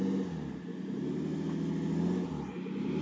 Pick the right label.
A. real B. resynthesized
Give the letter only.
A